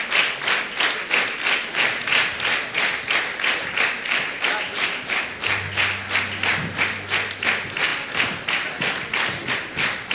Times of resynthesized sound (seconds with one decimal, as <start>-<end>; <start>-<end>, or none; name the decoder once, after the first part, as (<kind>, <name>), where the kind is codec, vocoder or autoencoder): none

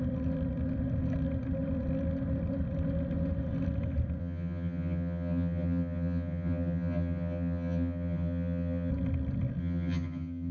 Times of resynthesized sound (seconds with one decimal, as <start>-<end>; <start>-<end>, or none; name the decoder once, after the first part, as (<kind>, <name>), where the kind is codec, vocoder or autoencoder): 4.2-8.9 (vocoder, HiFi-GAN); 9.6-10.5

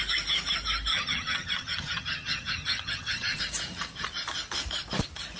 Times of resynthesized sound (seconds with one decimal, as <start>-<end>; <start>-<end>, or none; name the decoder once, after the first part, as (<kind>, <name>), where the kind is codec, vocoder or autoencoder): 0.9-3.4 (vocoder, HiFi-GAN)

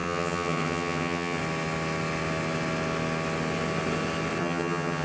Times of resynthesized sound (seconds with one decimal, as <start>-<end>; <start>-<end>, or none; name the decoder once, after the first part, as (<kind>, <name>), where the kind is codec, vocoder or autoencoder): 0.0-1.4 (vocoder, HiFi-GAN); 4.4-5.0

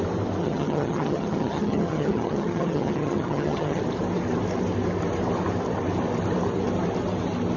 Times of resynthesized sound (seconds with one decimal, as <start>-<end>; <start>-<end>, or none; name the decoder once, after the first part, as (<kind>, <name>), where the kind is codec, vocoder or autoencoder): 0.4-3.8 (vocoder, HiFi-GAN)